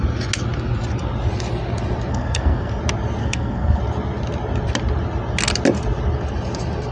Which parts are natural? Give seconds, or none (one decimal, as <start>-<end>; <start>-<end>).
0.0-2.1; 2.8-3.2; 3.8-6.9